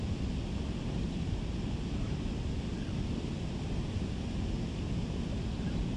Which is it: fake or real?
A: real